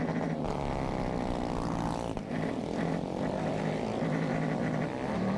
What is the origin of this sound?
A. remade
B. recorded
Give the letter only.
B